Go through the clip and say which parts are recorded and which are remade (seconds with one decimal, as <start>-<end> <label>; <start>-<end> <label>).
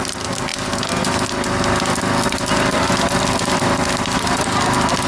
0.0-5.1 recorded